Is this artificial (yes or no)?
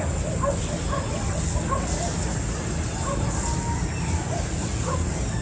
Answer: no